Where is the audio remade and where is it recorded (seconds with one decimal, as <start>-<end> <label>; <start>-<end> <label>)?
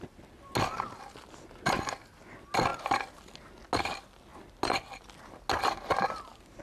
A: 0.0-6.6 recorded